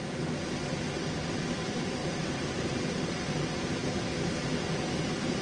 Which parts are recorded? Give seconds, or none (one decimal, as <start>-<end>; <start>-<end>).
0.0-2.0; 2.8-5.4